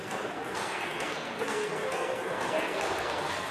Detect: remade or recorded remade